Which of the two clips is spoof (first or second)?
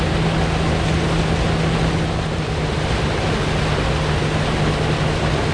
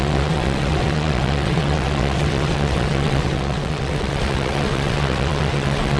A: second